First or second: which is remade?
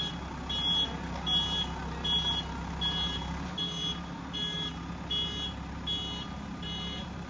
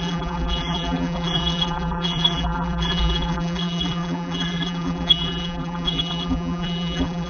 second